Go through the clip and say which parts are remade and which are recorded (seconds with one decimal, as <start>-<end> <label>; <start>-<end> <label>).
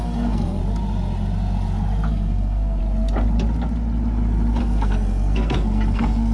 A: 0.0-0.6 remade; 0.6-2.1 recorded; 2.1-2.8 remade; 2.8-4.6 recorded; 4.6-6.3 remade